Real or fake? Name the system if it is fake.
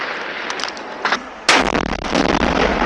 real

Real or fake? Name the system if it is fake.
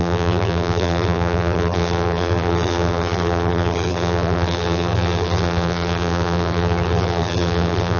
fake, vocoder, BigVGAN v2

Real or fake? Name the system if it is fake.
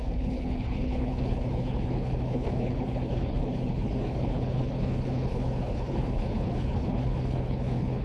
fake, codec, HILCodec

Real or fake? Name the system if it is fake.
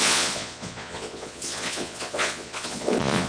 fake, vocoder, Vocos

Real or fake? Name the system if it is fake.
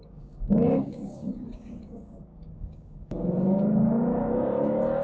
fake, codec, DAC